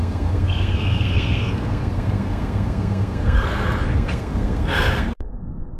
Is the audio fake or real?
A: fake